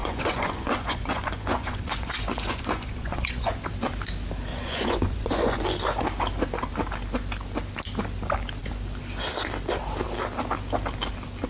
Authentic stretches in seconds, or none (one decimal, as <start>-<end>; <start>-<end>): 3.6-4.5; 5.6-11.5

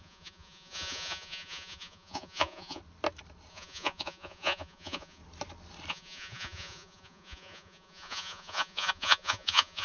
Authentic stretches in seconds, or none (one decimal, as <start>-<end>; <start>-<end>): 2.8-3.5; 5.2-5.9

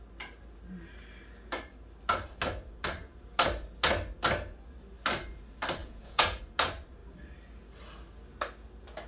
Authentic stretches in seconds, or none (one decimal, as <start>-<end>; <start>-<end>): 0.0-5.8; 6.4-9.1

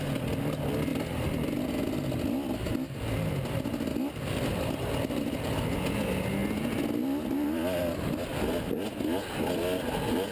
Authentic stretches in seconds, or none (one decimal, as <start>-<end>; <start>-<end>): 0.0-10.3

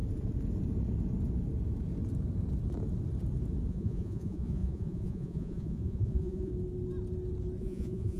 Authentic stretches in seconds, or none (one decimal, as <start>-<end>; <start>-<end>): 0.0-3.7; 6.5-7.6